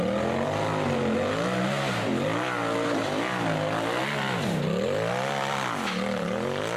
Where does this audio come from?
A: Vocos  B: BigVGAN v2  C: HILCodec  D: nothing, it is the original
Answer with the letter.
D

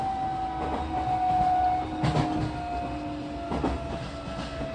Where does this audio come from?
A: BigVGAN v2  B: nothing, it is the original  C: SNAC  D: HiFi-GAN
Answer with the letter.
B